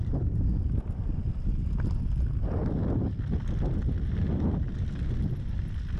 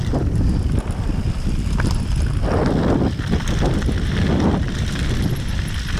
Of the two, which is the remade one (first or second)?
second